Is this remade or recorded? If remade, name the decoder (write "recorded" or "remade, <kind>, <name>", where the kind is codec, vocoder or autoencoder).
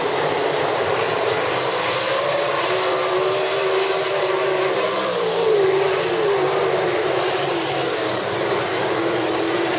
remade, vocoder, BigVGAN v2